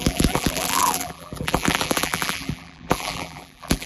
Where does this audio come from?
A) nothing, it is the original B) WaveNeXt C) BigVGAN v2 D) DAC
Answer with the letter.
C